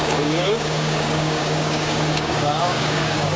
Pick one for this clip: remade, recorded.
remade